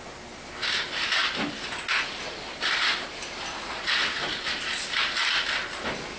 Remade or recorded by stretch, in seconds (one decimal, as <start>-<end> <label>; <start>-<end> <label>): 0.0-3.6 recorded; 3.6-4.2 remade; 4.2-6.2 recorded